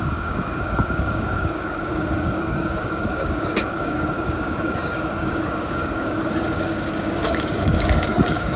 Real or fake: fake